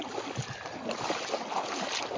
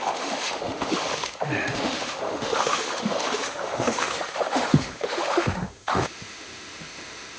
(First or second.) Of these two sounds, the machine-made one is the second